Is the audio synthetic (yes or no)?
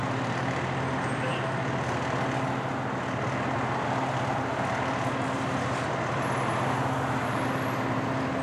no